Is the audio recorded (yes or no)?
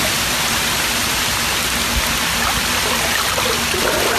yes